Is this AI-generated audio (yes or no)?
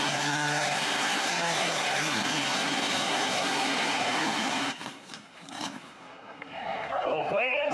yes